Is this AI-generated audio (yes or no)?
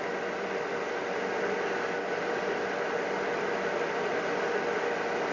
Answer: no